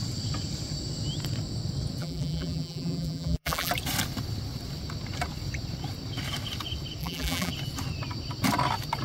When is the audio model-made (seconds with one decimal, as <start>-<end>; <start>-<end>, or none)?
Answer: 2.0-3.7; 7.0-7.5